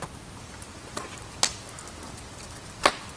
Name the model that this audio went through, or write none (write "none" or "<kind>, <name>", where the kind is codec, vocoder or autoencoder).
none